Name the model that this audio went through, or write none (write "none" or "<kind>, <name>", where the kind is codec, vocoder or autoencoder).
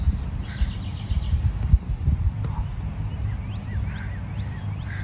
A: none